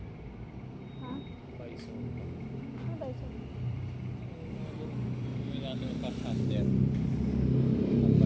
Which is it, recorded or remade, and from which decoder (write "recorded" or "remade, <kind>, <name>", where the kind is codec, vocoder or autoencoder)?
recorded